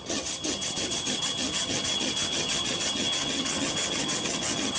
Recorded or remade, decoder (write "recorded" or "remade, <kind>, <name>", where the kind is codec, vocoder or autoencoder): remade, vocoder, HiFi-GAN